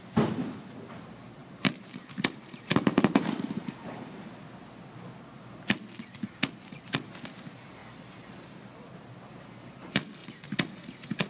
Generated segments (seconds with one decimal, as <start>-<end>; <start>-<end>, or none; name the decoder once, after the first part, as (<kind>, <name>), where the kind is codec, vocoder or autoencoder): 1.4-4.4 (vocoder, BigVGAN v2)